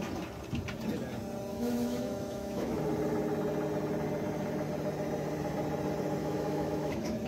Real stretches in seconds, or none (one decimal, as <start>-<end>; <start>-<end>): 0.0-1.5; 2.8-6.2